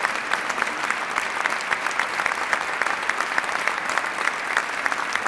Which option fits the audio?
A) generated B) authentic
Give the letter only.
A